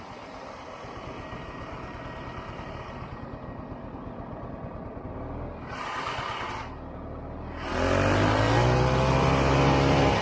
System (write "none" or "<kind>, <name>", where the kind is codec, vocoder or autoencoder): none